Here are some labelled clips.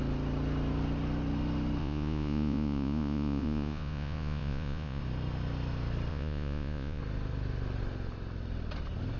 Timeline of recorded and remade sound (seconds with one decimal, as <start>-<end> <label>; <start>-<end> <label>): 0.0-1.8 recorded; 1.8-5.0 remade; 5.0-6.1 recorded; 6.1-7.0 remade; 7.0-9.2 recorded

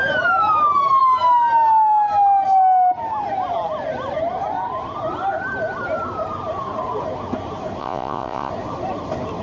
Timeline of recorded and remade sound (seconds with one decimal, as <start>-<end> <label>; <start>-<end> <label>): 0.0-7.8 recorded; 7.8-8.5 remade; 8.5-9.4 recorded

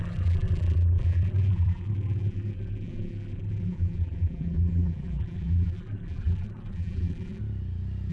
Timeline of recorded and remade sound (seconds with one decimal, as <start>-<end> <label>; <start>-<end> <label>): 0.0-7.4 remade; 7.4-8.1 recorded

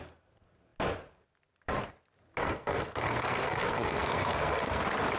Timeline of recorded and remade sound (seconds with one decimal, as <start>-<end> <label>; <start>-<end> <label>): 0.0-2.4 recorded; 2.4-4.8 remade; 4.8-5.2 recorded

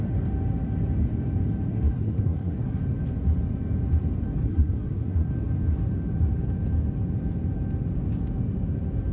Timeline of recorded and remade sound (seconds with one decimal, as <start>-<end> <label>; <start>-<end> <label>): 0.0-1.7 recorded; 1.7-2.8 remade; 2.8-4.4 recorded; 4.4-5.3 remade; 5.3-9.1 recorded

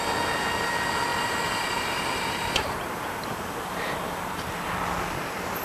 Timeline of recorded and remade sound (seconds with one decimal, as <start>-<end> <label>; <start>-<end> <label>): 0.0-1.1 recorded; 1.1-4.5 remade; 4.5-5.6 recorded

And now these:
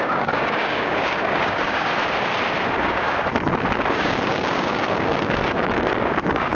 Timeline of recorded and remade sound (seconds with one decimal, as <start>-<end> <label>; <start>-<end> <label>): 0.0-1.9 remade; 1.9-2.8 recorded; 2.8-3.3 remade; 3.3-3.9 recorded; 3.9-6.5 remade